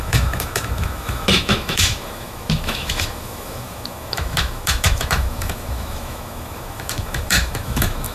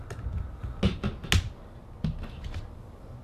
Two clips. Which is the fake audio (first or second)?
first